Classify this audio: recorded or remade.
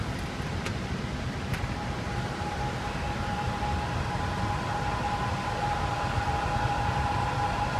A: recorded